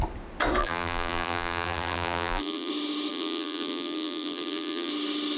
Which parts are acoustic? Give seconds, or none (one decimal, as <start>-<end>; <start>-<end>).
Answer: 0.0-0.6; 2.7-3.1; 4.9-5.4